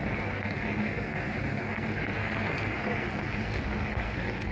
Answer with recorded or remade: remade